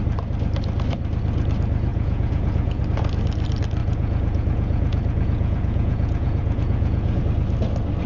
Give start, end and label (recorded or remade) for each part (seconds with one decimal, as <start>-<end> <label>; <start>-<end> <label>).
0.0-1.9 recorded; 1.9-2.8 remade; 2.8-3.8 recorded; 3.8-7.2 remade; 7.2-8.1 recorded